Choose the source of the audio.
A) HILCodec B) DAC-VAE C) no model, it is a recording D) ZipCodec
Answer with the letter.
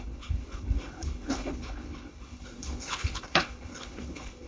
A